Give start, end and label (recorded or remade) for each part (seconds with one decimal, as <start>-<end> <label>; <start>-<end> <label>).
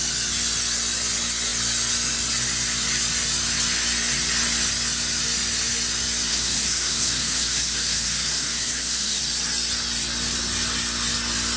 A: 0.0-6.3 recorded; 6.3-9.2 remade; 9.2-11.6 recorded